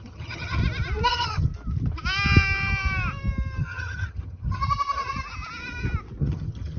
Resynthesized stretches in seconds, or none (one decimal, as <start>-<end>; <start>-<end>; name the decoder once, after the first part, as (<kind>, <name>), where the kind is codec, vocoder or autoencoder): 0.0-0.6 (vocoder, HiFi-GAN); 1.1-1.5; 3.6-4.6; 6.2-6.8